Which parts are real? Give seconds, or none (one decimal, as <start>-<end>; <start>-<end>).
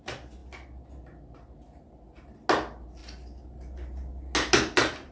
0.0-5.1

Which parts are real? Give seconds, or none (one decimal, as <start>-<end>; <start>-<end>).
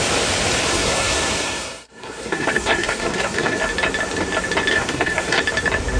0.0-0.7; 3.6-4.7; 5.4-6.0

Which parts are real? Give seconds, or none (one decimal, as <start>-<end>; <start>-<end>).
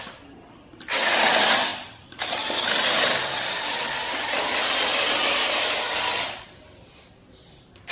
0.0-7.9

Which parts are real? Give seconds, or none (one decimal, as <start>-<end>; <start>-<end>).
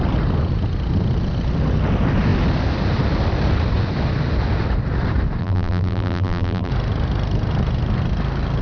0.0-5.4; 6.7-8.6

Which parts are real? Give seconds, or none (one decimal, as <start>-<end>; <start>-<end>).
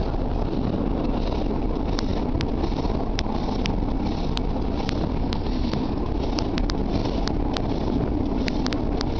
0.0-5.2; 6.0-9.2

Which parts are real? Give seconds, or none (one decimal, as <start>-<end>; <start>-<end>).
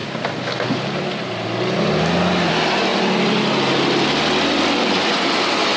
0.0-5.8